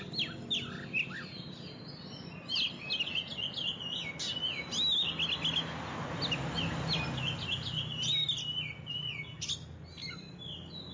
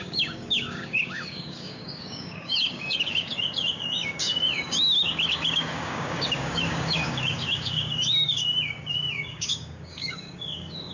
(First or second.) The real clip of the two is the first